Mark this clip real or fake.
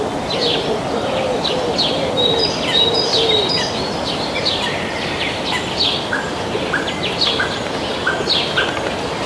real